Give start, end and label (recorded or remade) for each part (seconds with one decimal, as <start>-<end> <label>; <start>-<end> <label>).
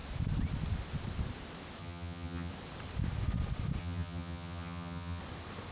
0.0-1.8 recorded; 1.8-2.5 remade; 2.5-3.8 recorded; 3.8-5.2 remade; 5.2-5.7 recorded